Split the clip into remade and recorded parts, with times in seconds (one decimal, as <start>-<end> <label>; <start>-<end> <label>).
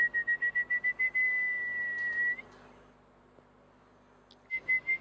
0.0-5.0 recorded